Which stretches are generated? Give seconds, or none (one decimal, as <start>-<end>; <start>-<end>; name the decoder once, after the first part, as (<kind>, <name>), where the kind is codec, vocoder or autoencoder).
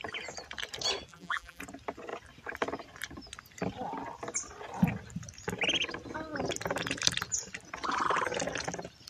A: 1.1-1.6 (vocoder, BigVGAN v2)